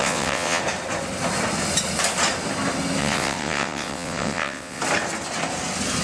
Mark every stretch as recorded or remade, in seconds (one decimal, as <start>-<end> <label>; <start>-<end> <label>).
0.0-0.6 remade; 0.6-3.0 recorded; 3.0-4.8 remade; 4.8-6.0 recorded